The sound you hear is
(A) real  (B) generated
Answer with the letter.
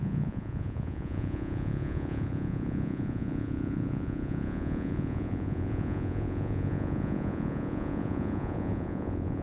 B